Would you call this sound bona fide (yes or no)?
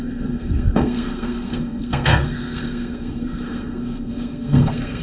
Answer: no